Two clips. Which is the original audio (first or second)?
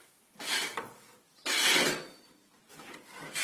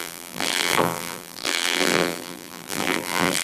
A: first